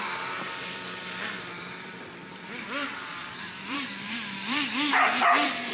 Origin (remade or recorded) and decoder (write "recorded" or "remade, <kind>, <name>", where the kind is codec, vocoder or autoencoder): remade, vocoder, BigVGAN v2